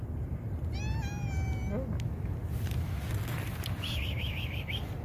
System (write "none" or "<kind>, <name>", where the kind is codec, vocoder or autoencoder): none